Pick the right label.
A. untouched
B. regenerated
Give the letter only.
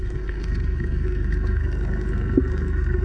B